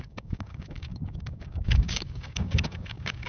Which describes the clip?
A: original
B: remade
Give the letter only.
B